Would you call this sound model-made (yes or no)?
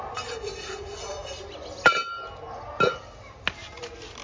no